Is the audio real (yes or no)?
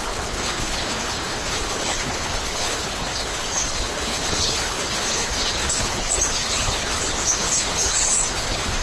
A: no